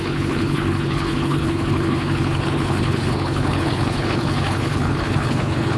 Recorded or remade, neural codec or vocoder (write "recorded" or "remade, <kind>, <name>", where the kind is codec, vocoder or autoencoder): remade, codec, HILCodec